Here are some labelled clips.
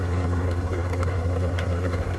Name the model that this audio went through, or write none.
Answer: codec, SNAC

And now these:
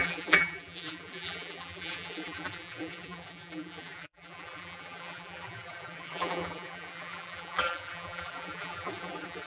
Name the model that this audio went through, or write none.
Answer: vocoder, BigVGAN v2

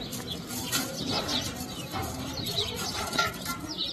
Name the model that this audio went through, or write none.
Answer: vocoder, BigVGAN v2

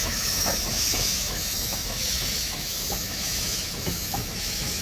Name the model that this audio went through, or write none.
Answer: autoencoder, DAC-VAE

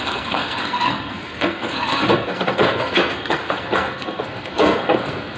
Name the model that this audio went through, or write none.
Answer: codec, SNAC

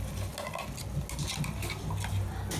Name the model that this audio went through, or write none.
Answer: none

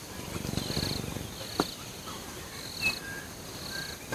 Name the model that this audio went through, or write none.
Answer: none